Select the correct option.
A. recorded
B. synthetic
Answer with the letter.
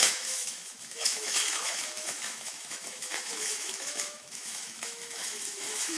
B